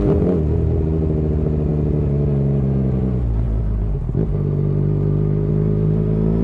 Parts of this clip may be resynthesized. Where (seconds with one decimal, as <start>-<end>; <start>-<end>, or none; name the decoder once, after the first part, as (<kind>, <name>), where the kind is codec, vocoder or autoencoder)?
none